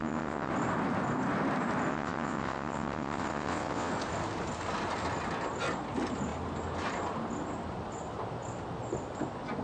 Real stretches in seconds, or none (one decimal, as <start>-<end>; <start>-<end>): 0.5-1.9; 3.9-9.6